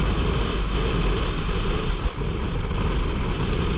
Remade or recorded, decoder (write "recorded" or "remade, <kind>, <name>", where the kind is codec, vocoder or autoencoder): recorded